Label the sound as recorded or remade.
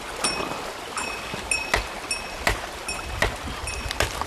recorded